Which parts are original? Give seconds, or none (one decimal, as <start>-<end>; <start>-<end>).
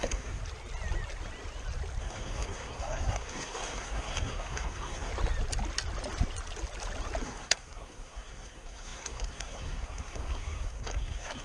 0.4-2.0; 5.1-7.2